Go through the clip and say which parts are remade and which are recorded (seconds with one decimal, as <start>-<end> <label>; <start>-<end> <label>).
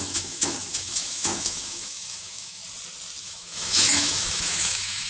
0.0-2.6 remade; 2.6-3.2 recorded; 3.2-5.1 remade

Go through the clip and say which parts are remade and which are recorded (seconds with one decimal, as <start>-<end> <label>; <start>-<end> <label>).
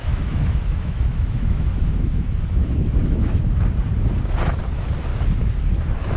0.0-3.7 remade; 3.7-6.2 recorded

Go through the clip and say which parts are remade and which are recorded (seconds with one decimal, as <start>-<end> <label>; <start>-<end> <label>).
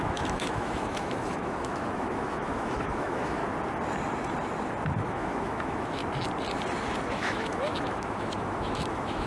0.0-3.4 remade; 3.4-5.0 recorded; 5.0-6.0 remade; 6.0-7.1 recorded; 7.1-9.3 remade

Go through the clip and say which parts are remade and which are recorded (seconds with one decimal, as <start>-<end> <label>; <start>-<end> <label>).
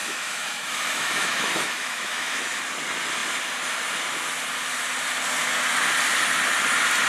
0.0-2.6 remade; 2.6-7.1 recorded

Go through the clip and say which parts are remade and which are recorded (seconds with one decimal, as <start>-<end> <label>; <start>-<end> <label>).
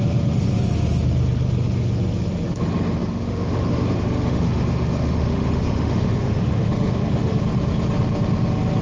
0.0-3.0 recorded; 3.0-7.4 remade; 7.4-8.8 recorded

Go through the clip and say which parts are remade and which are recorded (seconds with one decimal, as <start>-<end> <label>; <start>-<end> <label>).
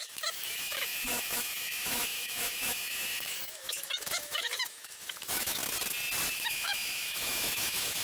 0.0-5.6 remade; 5.6-6.3 recorded; 6.3-8.0 remade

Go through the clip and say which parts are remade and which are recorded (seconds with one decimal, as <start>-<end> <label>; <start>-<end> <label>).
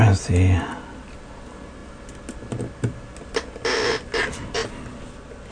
0.0-5.5 recorded